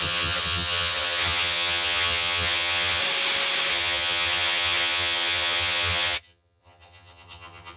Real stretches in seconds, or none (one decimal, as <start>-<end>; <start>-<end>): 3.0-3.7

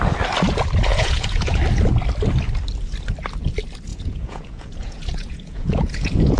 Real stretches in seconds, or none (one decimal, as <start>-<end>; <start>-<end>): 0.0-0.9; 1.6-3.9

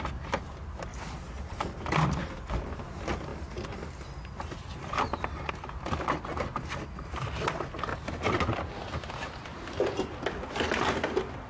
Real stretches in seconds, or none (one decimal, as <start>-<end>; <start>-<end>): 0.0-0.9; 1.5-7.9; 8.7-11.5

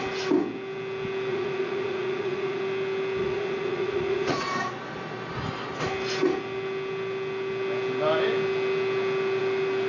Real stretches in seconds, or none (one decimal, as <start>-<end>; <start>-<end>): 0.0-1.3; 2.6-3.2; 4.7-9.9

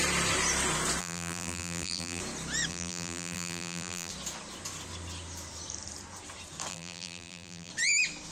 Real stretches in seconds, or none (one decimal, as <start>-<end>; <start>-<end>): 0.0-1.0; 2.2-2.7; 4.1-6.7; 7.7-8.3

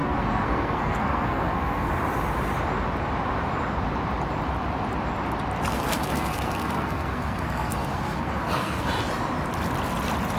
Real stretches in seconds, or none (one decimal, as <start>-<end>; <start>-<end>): 1.9-5.7; 8.9-10.4

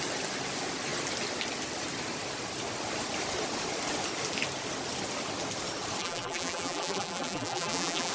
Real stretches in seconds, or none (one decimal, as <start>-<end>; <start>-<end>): 0.0-6.0

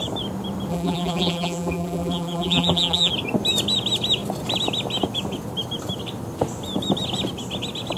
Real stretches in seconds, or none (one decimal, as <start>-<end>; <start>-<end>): 0.0-0.7; 3.1-8.0